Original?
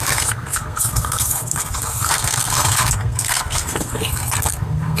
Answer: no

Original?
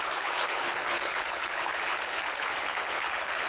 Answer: no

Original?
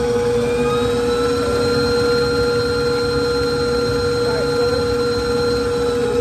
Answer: yes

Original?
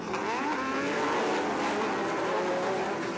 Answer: yes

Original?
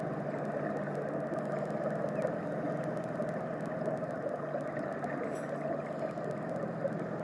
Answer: yes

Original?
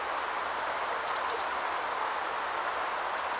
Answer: yes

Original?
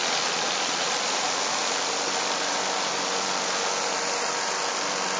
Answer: yes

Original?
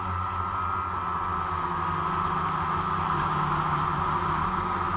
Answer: yes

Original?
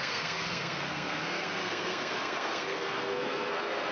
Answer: no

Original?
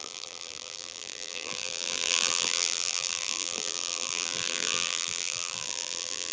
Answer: no